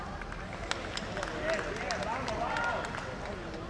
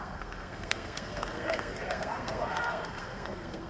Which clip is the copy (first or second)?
second